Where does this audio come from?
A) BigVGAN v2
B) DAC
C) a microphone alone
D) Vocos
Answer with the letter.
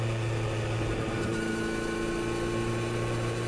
C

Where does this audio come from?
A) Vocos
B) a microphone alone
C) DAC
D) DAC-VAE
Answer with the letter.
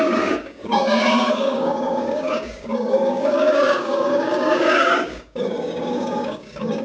C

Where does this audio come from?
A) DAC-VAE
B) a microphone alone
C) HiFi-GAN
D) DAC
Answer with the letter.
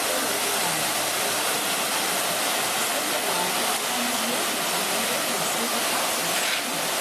B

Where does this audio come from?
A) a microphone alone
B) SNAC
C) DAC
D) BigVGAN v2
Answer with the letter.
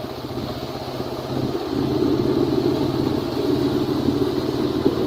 A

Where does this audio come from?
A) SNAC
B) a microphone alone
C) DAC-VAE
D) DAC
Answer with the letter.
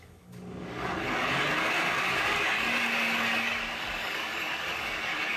D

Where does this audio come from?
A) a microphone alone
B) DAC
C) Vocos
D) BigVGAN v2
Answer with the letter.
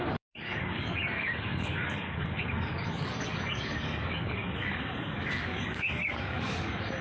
B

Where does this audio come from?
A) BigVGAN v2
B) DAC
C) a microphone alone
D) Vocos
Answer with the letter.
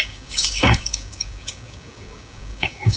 B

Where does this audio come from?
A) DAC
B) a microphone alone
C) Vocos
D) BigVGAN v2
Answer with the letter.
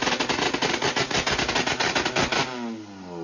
B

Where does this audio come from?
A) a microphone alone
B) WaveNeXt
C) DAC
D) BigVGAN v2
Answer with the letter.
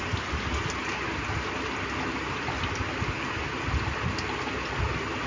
A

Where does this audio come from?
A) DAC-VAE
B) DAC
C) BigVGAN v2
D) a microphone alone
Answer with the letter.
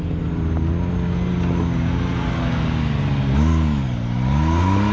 D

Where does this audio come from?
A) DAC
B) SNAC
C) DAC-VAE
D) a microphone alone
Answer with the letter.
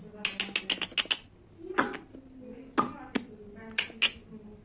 D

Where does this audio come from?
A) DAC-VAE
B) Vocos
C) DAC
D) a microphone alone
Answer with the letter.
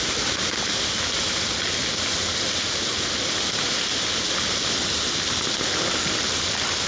D